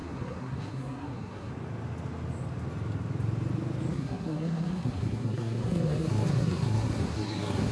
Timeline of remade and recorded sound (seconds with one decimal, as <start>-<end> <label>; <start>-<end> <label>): 0.0-1.5 remade; 1.5-3.9 recorded; 3.9-7.7 remade